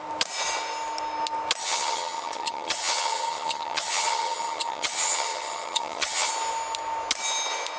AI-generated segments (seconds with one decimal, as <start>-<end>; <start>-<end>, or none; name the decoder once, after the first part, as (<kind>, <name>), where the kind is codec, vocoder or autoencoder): 1.6-6.3 (vocoder, HiFi-GAN)